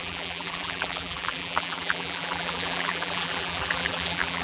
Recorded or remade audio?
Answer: remade